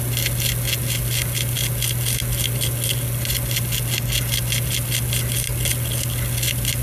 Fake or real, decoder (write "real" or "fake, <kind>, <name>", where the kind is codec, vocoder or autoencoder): real